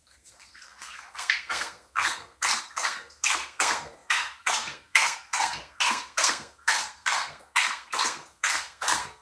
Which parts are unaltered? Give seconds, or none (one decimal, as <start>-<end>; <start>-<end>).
none